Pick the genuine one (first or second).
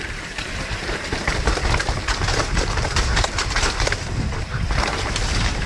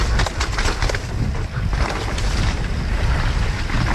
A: second